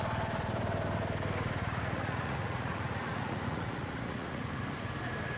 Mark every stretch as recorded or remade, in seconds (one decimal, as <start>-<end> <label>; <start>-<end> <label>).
0.0-1.6 recorded; 1.6-4.5 remade; 4.5-5.4 recorded